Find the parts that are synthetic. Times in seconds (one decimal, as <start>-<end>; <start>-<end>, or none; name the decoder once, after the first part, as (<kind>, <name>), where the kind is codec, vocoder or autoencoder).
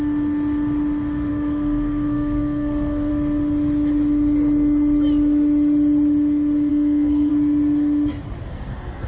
1.3-3.1 (codec, SNAC); 6.7-7.3; 8.5-9.1